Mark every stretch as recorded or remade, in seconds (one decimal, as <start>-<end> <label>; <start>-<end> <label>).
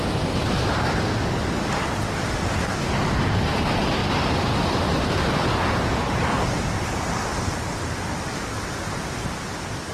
0.0-0.4 recorded; 0.4-1.2 remade; 1.2-4.0 recorded; 4.0-5.4 remade; 5.4-9.9 recorded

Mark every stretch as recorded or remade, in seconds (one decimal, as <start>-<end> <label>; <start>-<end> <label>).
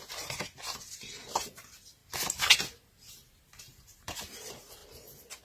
0.0-2.0 remade; 2.0-3.1 recorded; 3.1-4.8 remade; 4.8-5.4 recorded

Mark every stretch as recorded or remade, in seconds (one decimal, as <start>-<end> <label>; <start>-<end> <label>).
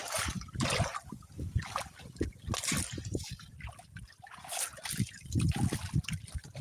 0.0-6.6 recorded